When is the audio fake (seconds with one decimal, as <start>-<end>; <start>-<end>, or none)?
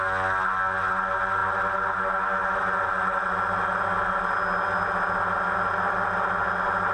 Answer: none